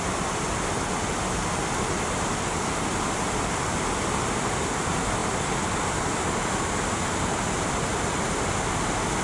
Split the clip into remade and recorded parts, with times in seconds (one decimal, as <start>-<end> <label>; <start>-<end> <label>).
0.0-9.2 recorded